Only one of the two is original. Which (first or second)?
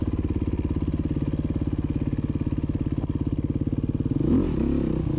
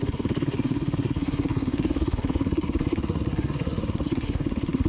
first